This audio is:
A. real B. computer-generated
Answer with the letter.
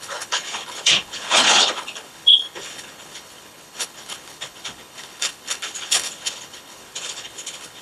B